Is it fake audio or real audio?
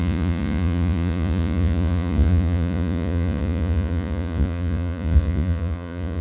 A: fake